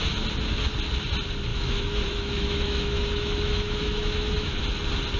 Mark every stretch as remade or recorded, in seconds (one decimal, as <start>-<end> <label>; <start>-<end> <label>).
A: 0.0-1.5 recorded; 1.5-4.6 remade; 4.6-5.2 recorded